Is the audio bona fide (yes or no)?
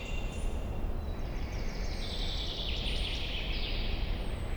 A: yes